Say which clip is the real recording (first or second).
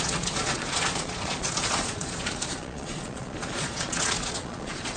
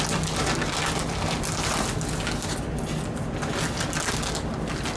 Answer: second